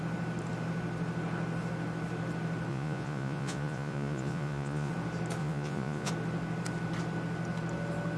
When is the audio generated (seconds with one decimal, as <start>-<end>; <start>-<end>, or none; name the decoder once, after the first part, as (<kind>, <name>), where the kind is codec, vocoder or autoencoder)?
2.7-4.9 (vocoder, Vocos); 5.4-6.1